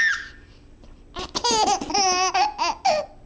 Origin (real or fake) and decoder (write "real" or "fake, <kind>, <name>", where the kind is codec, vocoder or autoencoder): real